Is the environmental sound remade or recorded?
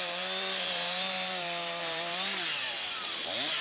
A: remade